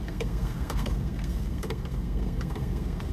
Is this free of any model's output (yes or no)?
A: no